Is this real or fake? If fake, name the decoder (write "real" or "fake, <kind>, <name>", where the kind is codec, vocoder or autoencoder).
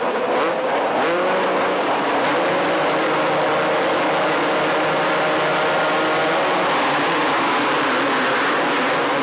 real